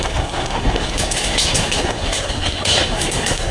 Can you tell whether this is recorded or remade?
remade